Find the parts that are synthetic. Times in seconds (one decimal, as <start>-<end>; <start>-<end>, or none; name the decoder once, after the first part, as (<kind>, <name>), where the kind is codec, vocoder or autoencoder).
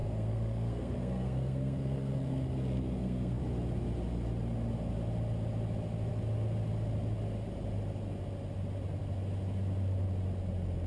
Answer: 0.0-3.4 (codec, SNAC)